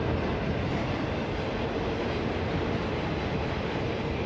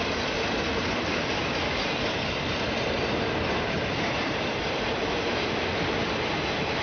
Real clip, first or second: first